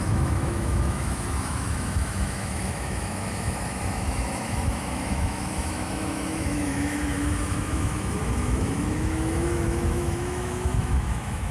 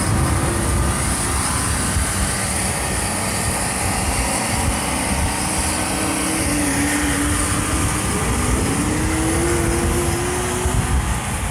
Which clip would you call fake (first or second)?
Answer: first